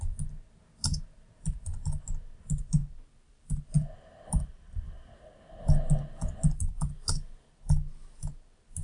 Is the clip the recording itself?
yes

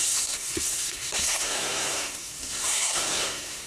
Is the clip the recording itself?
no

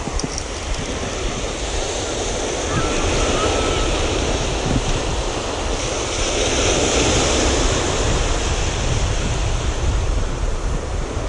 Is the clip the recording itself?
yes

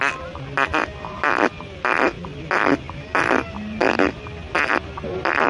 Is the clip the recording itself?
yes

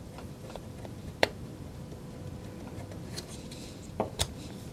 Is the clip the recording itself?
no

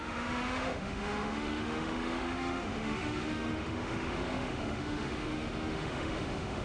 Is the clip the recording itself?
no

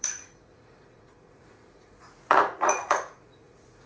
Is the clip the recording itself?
no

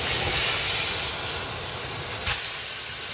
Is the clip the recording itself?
yes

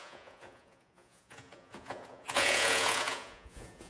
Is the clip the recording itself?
no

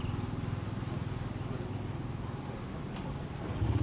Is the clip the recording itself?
yes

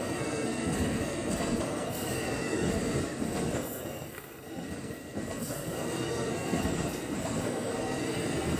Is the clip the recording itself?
no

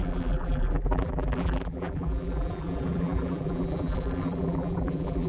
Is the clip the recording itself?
no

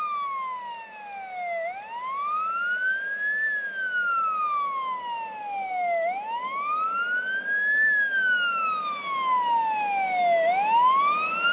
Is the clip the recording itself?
yes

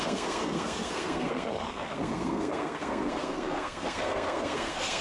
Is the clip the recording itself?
no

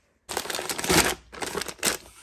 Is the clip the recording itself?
yes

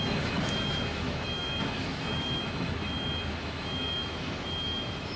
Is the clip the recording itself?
no